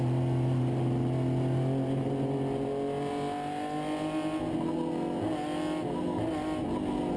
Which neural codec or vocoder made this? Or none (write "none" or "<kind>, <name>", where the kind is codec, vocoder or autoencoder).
none